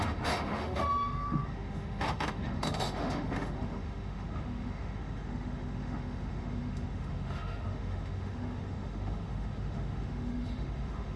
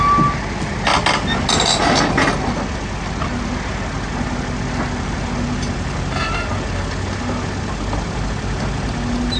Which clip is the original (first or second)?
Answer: second